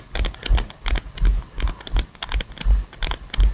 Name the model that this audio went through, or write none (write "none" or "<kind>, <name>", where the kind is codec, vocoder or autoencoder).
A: none